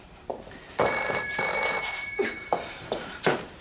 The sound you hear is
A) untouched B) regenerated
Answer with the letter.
B